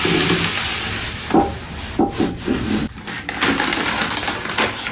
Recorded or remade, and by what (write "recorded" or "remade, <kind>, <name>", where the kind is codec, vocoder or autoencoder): recorded